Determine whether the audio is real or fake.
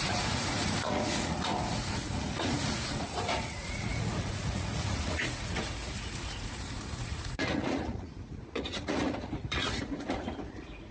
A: fake